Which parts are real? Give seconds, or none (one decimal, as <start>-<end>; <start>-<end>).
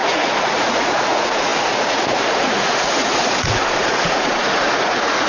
none